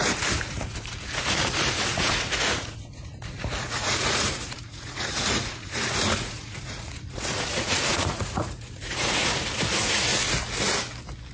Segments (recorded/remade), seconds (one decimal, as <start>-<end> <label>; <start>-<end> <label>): 0.0-10.1 remade; 10.1-11.3 recorded